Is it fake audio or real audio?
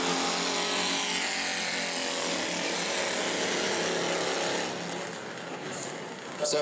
real